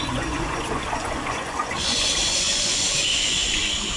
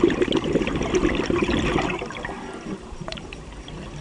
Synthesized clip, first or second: first